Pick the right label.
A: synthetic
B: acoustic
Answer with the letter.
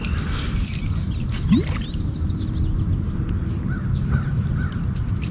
B